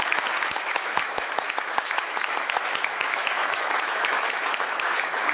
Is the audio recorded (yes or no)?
no